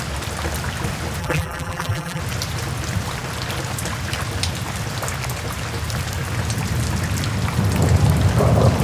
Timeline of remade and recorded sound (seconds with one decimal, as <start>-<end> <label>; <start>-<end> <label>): 0.0-1.2 recorded; 1.2-2.2 remade; 2.2-8.8 recorded